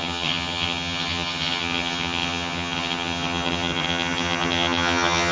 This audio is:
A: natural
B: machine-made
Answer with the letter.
B